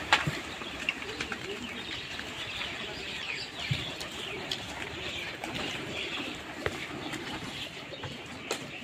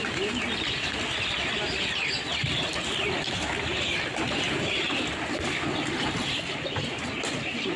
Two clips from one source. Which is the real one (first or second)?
second